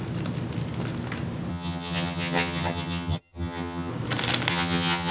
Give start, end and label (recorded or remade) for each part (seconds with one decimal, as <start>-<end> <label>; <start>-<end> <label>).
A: 0.0-1.5 recorded; 1.5-3.9 remade; 3.9-4.5 recorded; 4.5-5.1 remade